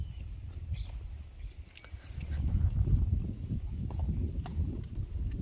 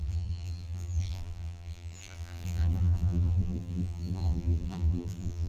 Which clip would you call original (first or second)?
first